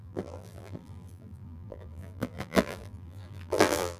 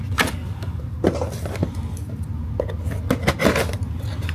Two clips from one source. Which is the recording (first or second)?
second